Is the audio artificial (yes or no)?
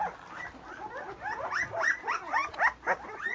no